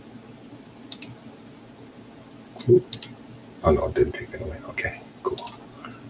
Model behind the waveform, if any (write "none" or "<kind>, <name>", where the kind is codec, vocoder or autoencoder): none